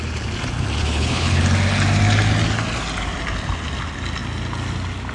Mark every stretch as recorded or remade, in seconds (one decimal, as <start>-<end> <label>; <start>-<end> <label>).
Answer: 0.0-0.8 recorded; 0.8-1.4 remade; 1.4-5.1 recorded